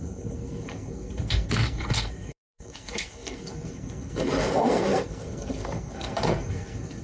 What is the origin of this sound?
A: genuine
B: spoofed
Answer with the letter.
B